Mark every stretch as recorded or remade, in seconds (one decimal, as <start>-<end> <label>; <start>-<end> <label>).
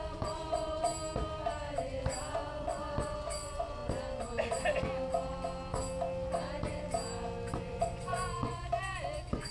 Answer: 0.0-0.9 remade; 0.9-2.3 recorded; 2.3-3.8 remade; 3.8-7.6 recorded; 7.6-9.5 remade